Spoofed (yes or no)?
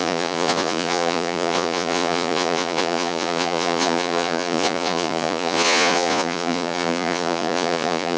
yes